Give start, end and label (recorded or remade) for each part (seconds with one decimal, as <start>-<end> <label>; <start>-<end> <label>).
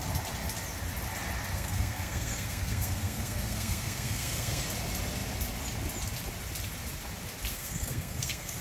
0.0-1.5 recorded; 1.5-4.6 remade; 4.6-7.5 recorded; 7.5-8.6 remade